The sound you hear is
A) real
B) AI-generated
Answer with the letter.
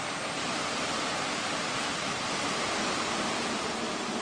B